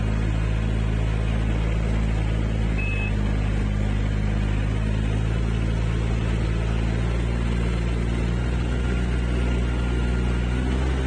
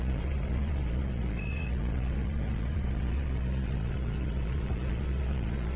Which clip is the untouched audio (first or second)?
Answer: first